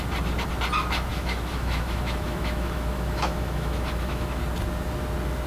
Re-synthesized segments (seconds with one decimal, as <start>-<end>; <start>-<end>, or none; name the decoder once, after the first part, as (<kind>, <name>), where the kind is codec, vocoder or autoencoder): 1.1-4.4 (autoencoder, DAC-VAE)